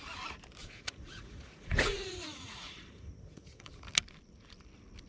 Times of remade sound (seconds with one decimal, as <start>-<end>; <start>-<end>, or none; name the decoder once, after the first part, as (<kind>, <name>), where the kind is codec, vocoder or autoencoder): 0.6-3.7 (vocoder, Vocos)